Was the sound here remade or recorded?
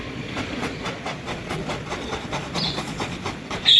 remade